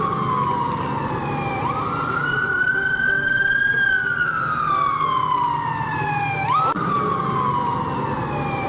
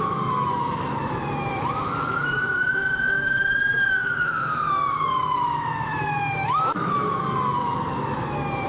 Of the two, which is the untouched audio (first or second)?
first